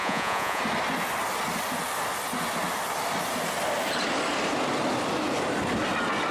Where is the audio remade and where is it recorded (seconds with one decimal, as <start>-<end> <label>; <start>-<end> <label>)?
0.0-0.6 remade; 0.6-6.3 recorded